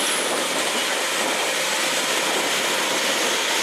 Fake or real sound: real